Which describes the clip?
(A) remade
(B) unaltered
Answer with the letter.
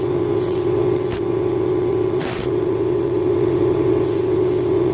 A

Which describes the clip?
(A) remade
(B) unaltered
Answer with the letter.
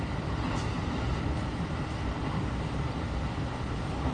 B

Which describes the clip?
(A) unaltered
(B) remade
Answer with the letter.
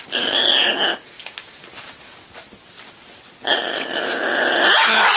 A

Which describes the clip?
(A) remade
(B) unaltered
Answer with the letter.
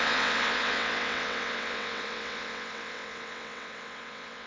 A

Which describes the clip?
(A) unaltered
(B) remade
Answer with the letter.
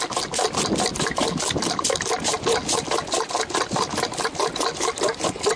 A